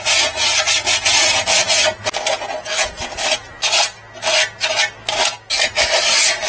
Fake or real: real